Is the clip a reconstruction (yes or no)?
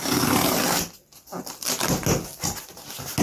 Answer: no